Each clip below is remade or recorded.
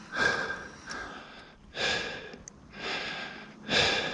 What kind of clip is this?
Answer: recorded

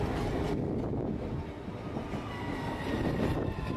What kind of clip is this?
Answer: recorded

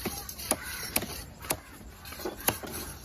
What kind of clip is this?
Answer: remade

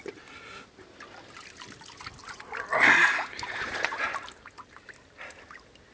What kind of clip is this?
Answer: recorded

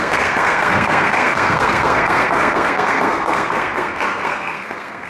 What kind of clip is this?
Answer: remade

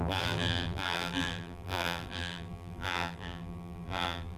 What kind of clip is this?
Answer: remade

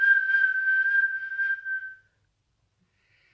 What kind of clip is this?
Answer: recorded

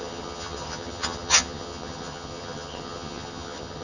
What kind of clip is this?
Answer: remade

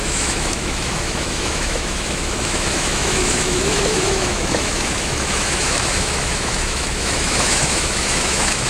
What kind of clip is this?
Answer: remade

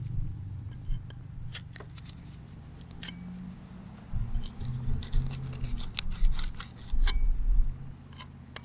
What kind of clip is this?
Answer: recorded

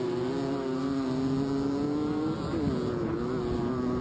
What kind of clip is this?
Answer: recorded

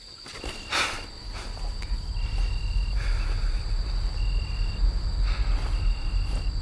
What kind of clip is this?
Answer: recorded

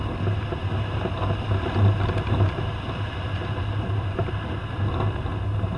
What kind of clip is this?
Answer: recorded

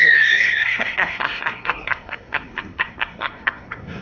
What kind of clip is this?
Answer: remade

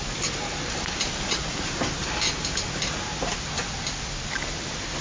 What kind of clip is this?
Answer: recorded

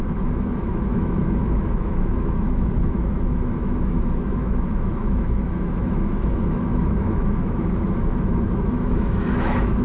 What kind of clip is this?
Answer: remade